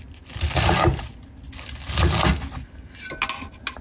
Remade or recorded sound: recorded